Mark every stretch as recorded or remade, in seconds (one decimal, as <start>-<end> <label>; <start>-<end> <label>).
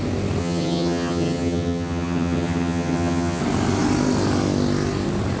0.0-0.4 recorded; 0.4-3.4 remade; 3.4-5.4 recorded